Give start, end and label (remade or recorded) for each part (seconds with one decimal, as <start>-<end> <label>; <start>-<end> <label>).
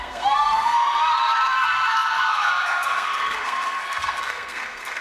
0.0-5.0 remade